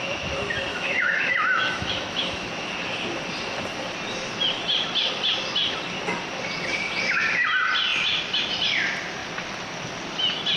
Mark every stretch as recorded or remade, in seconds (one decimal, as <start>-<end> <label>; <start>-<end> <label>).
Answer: 0.0-0.7 recorded; 0.7-2.5 remade; 2.5-10.6 recorded